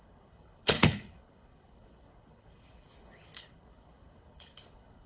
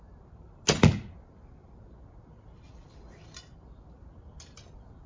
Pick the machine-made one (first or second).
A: first